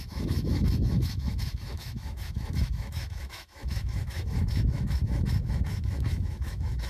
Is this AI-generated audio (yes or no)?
yes